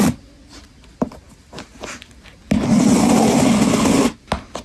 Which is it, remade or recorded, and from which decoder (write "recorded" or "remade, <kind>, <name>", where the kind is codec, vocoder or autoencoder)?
recorded